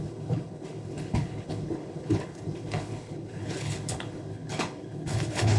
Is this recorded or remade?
remade